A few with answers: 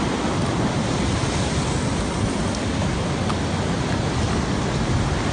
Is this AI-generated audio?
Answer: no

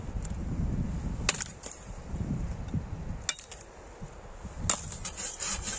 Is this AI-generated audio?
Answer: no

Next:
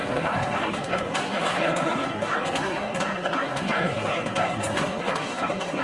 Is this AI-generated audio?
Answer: yes